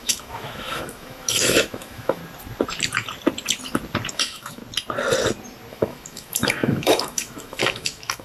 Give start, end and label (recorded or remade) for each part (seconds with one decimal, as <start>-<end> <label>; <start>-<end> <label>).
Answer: 0.0-2.2 remade; 2.2-4.1 recorded; 4.1-4.6 remade; 4.6-5.7 recorded; 5.7-8.2 remade